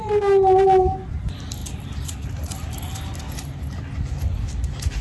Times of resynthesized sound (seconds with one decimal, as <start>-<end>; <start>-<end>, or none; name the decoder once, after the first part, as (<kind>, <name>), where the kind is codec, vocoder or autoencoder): none